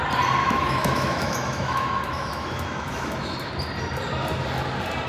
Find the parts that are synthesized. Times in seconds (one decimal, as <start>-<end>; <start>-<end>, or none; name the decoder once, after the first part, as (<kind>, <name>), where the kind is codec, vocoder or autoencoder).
0.4-3.5 (autoencoder, DAC-VAE)